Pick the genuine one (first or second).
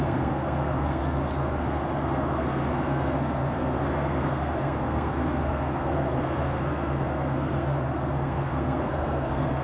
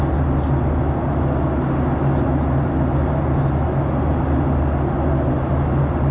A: second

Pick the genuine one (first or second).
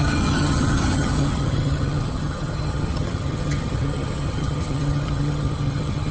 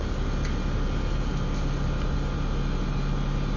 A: second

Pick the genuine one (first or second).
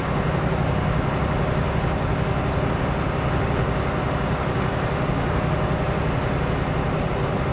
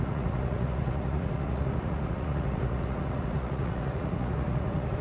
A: first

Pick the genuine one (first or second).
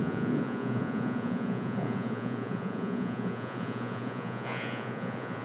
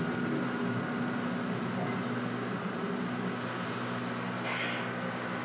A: second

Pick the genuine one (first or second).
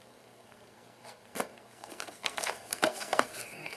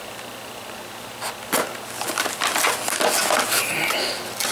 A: second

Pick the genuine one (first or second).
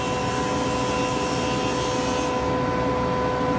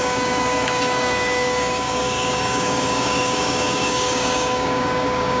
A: first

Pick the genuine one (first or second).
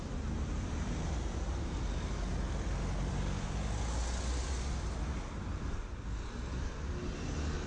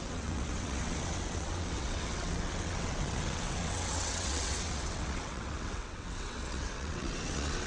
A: first